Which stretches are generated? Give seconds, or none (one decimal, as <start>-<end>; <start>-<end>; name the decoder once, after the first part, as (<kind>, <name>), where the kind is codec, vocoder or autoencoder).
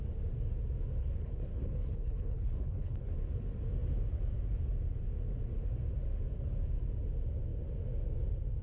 1.0-3.1 (codec, HILCodec)